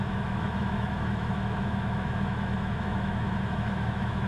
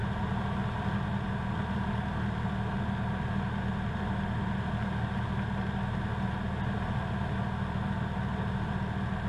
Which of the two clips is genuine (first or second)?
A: second